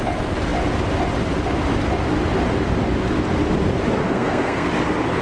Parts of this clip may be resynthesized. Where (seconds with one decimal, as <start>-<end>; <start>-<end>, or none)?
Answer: 4.0-4.7